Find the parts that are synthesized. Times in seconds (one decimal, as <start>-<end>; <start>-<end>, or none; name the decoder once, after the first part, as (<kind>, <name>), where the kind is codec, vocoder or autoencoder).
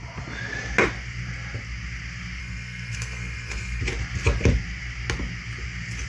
2.4-3.8 (codec, SNAC)